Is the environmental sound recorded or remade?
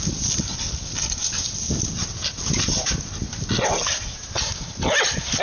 recorded